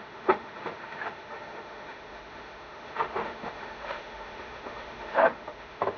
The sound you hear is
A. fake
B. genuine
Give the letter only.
A